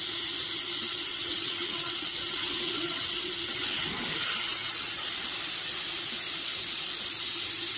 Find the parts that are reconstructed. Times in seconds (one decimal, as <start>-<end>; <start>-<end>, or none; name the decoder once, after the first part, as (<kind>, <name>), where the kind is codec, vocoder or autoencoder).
1.1-3.9 (vocoder, WaveNeXt); 4.5-5.1